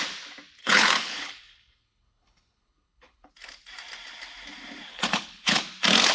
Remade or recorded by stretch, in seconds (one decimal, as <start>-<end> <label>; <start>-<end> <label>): 0.0-0.6 recorded; 0.6-3.3 remade; 3.3-4.9 recorded; 4.9-5.6 remade; 5.6-6.1 recorded